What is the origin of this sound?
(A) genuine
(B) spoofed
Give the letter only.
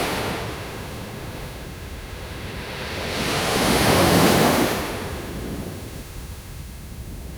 B